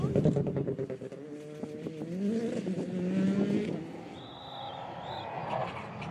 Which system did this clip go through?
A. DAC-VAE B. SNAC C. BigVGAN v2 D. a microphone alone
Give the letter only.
D